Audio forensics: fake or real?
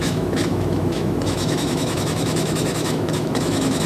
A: fake